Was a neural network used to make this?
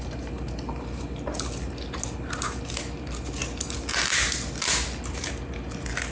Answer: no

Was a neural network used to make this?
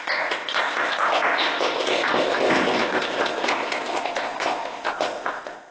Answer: yes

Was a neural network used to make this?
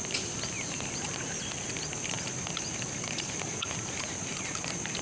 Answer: no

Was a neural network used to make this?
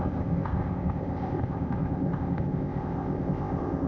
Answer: yes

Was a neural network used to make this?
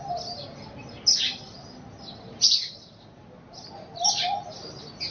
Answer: no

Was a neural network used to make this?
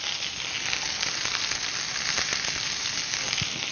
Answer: no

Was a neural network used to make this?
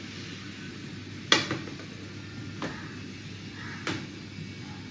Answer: no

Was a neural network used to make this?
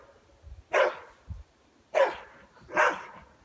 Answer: no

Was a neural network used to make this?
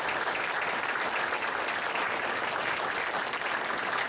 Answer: no